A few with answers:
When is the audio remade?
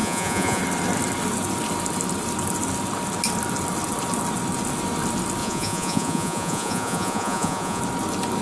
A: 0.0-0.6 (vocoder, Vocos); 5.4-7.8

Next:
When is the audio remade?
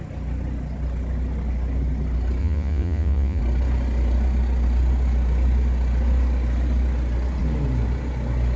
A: 2.4-3.4 (vocoder, Vocos)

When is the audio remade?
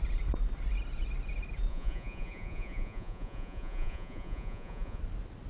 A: 1.7-5.0 (vocoder, Vocos)